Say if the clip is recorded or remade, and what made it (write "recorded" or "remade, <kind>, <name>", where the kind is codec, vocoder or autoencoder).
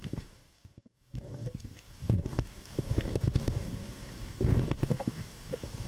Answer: remade, codec, DAC